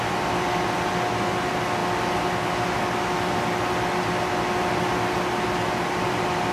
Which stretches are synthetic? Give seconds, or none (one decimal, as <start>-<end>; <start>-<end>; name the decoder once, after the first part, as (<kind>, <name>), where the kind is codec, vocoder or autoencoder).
none